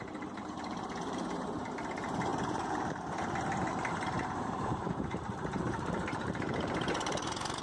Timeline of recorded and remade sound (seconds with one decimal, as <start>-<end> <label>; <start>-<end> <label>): 0.0-2.3 remade; 2.3-3.6 recorded; 3.6-7.6 remade